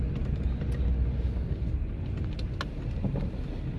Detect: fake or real real